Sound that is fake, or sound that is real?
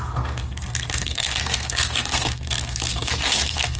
fake